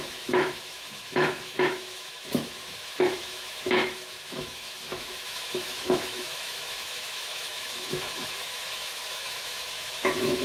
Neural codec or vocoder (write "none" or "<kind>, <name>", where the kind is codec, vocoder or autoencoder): autoencoder, DAC-VAE